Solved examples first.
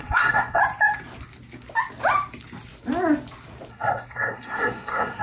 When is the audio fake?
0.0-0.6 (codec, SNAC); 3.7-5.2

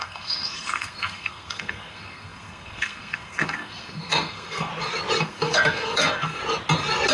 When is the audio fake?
0.0-4.7 (codec, SNAC); 5.2-6.4

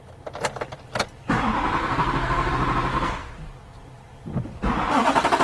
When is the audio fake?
1.8-2.5 (codec, SNAC); 2.9-3.5

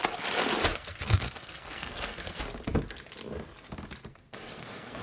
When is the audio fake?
0.7-2.4 (codec, SNAC); 4.1-5.0

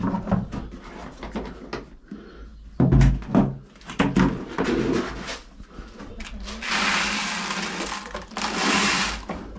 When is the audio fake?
none

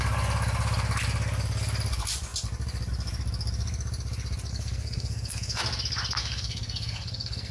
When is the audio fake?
4.5-5.6 (codec, SNAC); 6.2-7.5